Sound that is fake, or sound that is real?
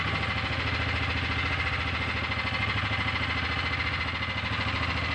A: real